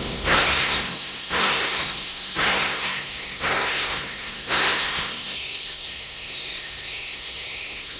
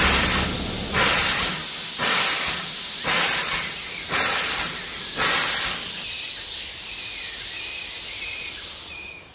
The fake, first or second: first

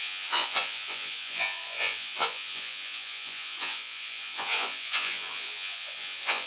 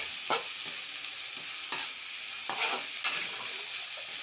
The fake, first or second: first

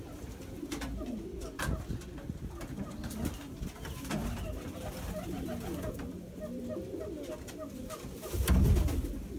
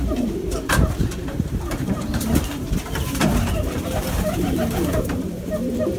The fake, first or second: second